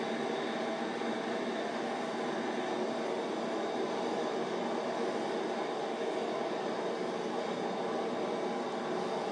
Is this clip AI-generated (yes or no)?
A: no